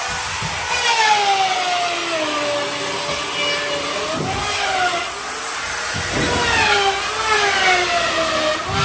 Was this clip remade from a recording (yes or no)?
no